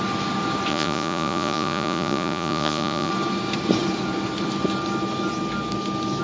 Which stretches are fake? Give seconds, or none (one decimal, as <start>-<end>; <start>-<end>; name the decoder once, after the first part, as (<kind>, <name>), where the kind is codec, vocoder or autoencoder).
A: 0.7-3.1 (vocoder, Vocos)